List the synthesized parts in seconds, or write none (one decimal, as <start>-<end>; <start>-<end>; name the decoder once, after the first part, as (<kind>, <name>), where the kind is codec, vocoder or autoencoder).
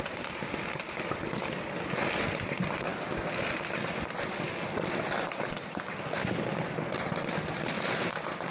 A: none